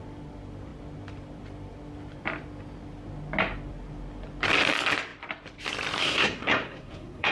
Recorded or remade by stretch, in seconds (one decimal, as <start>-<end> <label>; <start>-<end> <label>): 0.0-6.0 recorded; 6.0-7.3 remade